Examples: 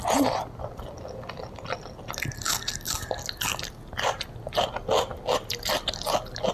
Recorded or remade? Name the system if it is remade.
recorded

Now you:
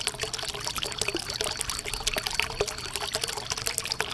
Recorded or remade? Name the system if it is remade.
recorded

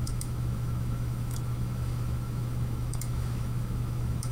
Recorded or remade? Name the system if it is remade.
remade, autoencoder, DAC-VAE